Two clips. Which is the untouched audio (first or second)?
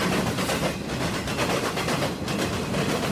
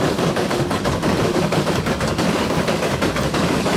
first